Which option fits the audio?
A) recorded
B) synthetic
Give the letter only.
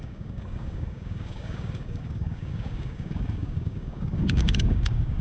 B